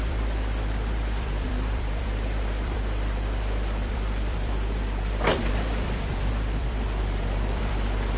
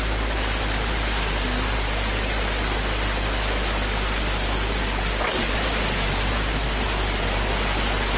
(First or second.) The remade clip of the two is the first